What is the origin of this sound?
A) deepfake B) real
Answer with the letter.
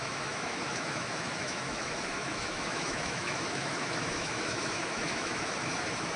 A